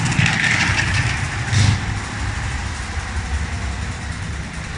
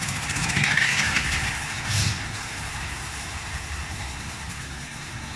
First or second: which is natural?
first